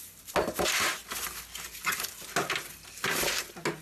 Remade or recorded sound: recorded